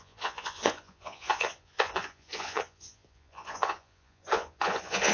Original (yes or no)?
no